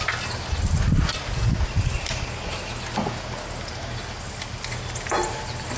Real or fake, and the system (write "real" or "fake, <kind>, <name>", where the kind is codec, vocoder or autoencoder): real